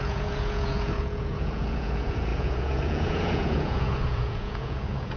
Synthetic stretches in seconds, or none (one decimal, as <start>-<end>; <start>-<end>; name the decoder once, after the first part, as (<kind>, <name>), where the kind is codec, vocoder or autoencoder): 0.0-5.2 (vocoder, Vocos)